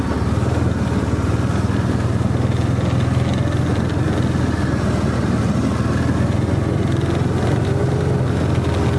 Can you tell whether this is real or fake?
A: real